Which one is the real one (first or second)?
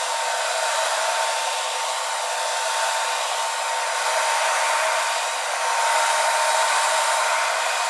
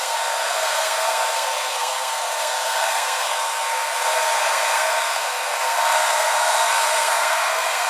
first